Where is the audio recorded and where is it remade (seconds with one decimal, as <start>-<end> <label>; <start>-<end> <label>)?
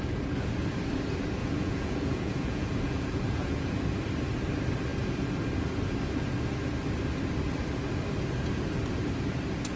0.0-1.4 recorded; 1.4-3.8 remade; 3.8-9.8 recorded